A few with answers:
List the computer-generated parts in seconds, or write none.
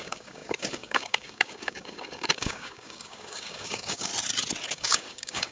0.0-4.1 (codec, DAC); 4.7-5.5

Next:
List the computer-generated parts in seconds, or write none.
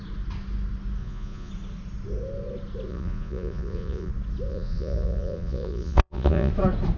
1.0-1.5 (vocoder, Vocos); 2.9-4.1; 4.5-6.5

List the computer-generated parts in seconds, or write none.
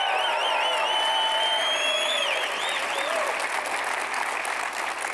none